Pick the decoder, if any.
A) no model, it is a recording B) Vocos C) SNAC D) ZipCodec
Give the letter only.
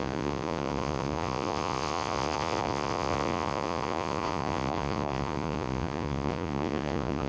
B